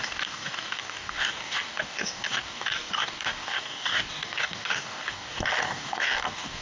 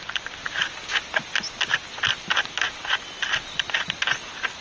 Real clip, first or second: second